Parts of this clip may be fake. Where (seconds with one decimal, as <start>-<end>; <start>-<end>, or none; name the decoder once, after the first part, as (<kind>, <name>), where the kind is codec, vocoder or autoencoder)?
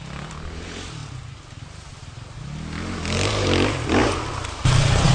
none